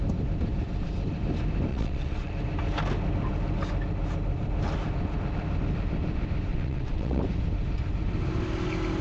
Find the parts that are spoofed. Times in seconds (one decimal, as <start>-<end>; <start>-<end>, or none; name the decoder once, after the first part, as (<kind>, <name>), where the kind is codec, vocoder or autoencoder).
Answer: 1.7-2.3 (vocoder, WaveNeXt); 6.5-7.2